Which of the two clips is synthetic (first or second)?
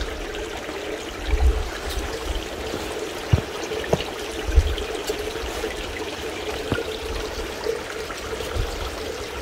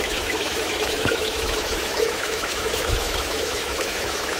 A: second